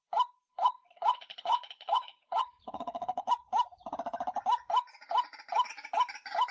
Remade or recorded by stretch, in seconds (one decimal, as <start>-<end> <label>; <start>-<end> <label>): 0.0-0.5 recorded; 0.5-3.3 remade; 3.3-6.5 recorded